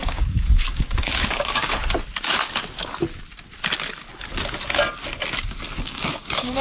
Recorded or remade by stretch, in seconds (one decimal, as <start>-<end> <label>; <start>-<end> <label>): 0.0-1.8 remade; 1.8-5.8 recorded; 5.8-6.6 remade